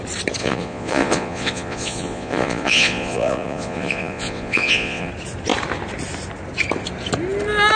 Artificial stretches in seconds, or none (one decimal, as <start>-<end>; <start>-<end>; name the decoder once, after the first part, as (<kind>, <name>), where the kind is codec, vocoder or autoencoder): 0.4-5.1 (vocoder, Vocos)